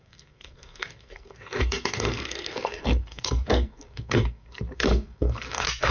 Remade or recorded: remade